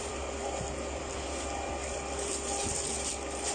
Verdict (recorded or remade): remade